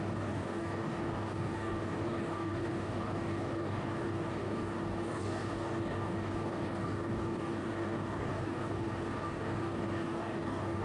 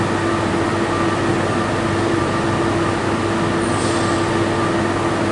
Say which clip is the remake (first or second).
first